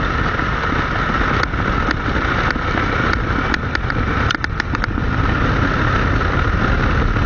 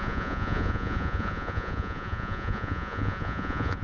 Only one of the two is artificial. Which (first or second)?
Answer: second